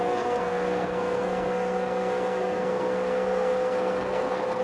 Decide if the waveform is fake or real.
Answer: fake